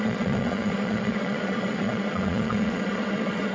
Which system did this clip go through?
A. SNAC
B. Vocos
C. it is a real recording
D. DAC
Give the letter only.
B